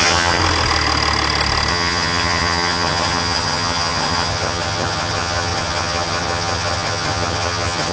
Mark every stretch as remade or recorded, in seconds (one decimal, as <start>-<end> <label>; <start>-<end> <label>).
0.0-0.4 remade; 0.4-1.7 recorded; 1.7-7.9 remade